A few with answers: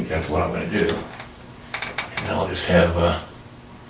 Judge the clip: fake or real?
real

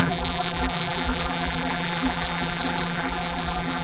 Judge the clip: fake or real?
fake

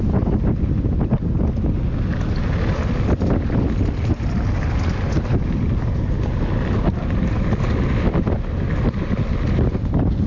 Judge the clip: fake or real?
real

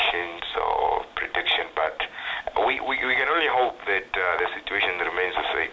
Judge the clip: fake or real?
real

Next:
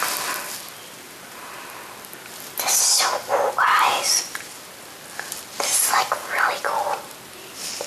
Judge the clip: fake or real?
real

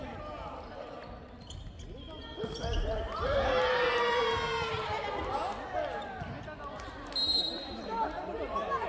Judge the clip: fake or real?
real